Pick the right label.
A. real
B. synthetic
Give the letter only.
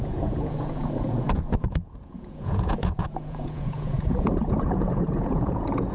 B